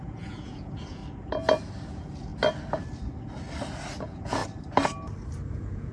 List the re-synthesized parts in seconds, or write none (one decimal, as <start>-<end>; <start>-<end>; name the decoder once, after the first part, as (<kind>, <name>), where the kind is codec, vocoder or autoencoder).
0.0-1.0 (vocoder, Vocos); 1.9-2.3; 4.0-4.4; 5.5-5.9